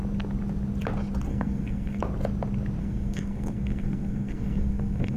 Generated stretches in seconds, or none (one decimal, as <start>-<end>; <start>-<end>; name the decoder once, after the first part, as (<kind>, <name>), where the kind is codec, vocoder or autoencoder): 1.3-2.0 (codec, SNAC); 2.8-5.2